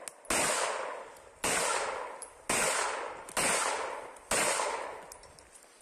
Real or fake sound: real